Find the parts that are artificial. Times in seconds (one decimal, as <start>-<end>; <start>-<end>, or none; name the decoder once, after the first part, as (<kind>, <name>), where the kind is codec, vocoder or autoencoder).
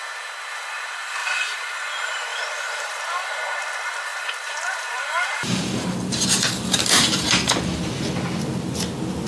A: 2.3-3.0 (vocoder, BigVGAN v2); 4.1-7.9